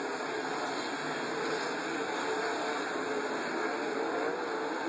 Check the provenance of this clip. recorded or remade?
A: recorded